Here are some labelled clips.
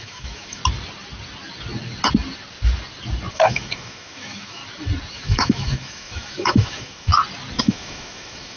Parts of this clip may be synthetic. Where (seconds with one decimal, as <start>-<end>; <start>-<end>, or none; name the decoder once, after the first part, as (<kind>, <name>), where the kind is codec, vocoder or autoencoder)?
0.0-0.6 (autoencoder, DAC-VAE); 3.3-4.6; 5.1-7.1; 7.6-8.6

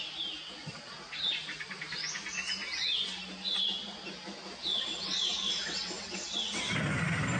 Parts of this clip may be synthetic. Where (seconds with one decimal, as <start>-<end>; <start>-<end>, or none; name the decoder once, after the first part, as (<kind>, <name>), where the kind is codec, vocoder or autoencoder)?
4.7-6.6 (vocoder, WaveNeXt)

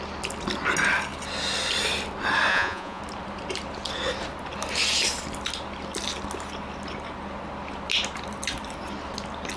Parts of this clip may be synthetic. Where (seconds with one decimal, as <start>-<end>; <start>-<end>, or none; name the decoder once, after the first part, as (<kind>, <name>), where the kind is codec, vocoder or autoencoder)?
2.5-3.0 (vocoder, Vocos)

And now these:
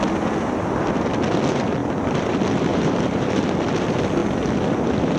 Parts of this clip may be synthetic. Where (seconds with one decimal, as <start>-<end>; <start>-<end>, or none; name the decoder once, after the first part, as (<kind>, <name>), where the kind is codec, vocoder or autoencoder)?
1.8-2.3 (vocoder, BigVGAN v2); 2.7-3.5

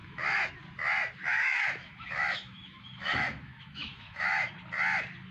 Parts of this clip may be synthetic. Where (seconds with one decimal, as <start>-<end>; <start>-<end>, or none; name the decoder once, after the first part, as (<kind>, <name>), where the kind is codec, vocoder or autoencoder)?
0.0-0.5 (autoencoder, DAC-VAE); 1.3-4.5

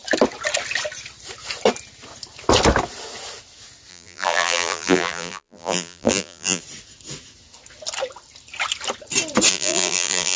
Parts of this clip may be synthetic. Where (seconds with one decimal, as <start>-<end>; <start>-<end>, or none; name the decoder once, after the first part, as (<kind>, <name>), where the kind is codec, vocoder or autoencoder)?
3.9-6.6 (vocoder, BigVGAN v2); 9.5-10.4

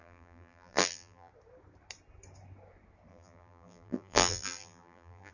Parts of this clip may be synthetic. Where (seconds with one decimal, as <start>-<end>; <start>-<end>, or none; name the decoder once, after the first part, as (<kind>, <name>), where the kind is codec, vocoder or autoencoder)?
0.0-1.3 (vocoder, BigVGAN v2); 3.1-5.3